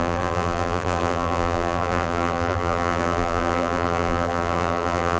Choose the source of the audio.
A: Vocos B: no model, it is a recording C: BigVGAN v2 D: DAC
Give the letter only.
C